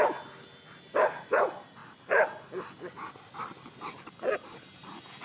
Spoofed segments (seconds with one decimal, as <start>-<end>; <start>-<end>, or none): none